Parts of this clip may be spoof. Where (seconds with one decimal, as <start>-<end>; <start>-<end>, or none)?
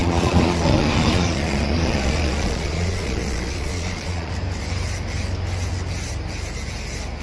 0.0-4.3